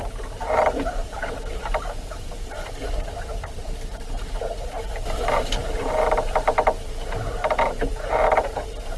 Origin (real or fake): fake